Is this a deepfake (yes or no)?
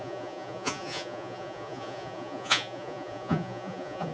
yes